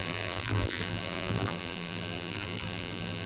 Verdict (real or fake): fake